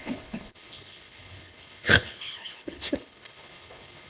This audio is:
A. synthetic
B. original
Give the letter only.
A